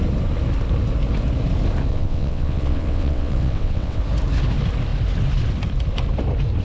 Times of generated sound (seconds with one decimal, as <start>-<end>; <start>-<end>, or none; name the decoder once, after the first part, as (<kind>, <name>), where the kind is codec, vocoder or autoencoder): 1.9-4.0 (vocoder, WaveNeXt)